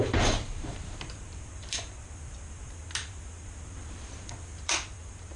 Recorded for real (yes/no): no